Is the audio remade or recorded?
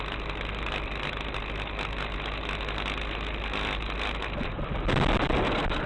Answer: recorded